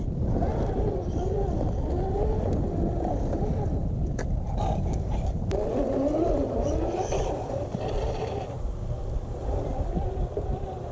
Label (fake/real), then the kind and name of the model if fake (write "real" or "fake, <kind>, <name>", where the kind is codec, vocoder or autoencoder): fake, vocoder, BigVGAN v2